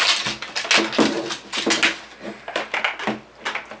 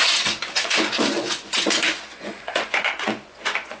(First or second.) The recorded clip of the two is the first